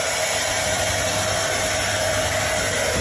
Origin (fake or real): real